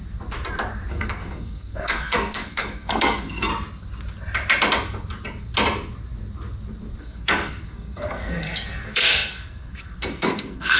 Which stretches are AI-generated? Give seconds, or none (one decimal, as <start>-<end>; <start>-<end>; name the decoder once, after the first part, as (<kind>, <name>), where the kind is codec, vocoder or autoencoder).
0.9-3.5 (codec, SNAC); 7.0-10.8